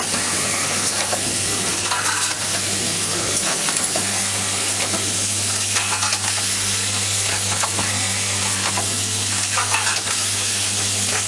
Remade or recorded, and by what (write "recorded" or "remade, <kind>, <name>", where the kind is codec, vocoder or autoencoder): remade, codec, SNAC